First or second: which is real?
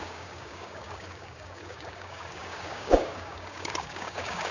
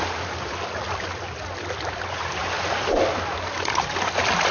second